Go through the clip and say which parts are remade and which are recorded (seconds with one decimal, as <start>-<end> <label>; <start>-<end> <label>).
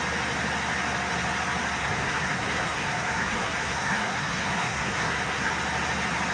0.0-1.8 recorded; 1.8-5.5 remade; 5.5-6.3 recorded